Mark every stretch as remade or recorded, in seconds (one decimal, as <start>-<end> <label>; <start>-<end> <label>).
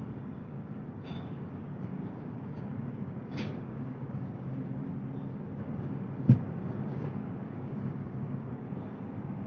0.0-4.8 remade; 4.8-5.3 recorded; 5.3-9.5 remade